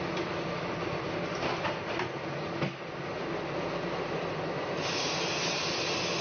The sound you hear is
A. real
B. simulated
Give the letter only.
A